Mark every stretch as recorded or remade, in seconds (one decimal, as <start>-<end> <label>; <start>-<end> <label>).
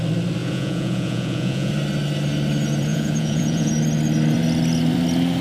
0.0-0.4 recorded; 0.4-1.7 remade; 1.7-2.9 recorded; 2.9-3.7 remade; 3.7-5.4 recorded